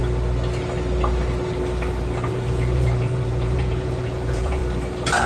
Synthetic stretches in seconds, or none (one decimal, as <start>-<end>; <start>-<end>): 2.3-4.6